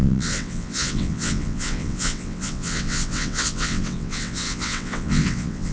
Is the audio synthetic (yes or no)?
yes